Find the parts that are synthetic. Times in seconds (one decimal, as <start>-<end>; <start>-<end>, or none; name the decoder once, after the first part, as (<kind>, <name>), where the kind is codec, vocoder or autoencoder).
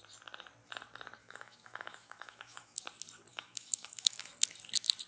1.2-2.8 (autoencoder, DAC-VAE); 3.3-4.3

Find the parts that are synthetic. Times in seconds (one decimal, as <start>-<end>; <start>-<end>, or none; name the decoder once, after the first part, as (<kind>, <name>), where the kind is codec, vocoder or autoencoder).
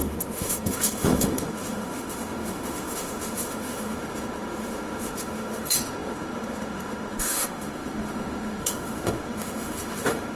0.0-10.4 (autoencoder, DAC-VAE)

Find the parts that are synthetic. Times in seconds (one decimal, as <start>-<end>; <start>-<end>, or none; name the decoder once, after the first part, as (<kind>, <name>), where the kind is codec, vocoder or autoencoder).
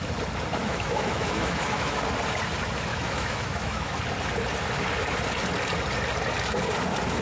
0.6-2.0 (autoencoder, DAC-VAE); 2.9-4.0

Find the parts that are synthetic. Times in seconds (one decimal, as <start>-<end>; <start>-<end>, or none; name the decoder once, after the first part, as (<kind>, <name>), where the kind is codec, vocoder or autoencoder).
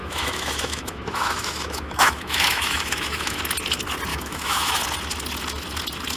0.0-3.4 (autoencoder, DAC-VAE); 4.1-4.8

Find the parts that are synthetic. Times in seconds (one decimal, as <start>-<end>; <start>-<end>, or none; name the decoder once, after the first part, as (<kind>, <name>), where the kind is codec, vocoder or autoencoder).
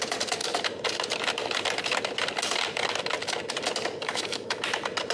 4.0-4.6 (autoencoder, DAC-VAE)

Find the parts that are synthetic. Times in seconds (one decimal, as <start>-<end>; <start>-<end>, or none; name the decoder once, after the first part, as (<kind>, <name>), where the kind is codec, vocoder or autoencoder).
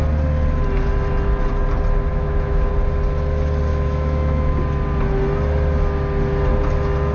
2.1-2.7 (autoencoder, DAC-VAE); 3.7-4.5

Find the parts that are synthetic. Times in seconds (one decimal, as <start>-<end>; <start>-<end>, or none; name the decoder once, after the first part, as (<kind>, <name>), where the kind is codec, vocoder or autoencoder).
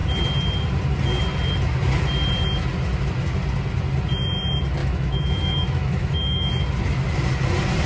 4.8-6.5 (autoencoder, DAC-VAE)